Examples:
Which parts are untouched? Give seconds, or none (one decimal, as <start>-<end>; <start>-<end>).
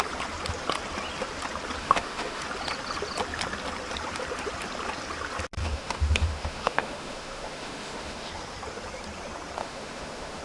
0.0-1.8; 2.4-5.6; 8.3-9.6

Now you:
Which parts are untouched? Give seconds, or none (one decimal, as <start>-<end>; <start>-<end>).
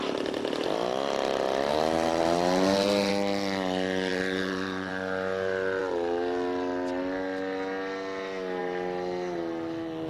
0.0-1.7; 3.1-4.1; 4.9-10.1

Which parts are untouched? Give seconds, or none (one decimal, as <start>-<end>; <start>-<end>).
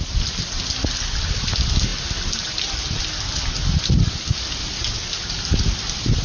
0.0-6.2